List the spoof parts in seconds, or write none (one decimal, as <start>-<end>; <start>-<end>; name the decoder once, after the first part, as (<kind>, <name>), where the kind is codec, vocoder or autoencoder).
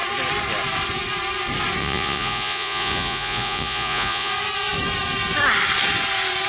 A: 1.8-4.3 (vocoder, Vocos)